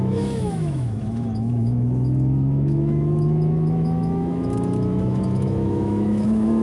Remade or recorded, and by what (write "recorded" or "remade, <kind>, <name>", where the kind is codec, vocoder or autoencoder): remade, autoencoder, DAC-VAE